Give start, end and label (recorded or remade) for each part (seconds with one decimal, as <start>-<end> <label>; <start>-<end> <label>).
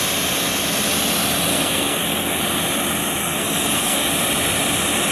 0.0-1.5 recorded; 1.5-2.4 remade; 2.4-3.2 recorded; 3.2-4.1 remade; 4.1-5.1 recorded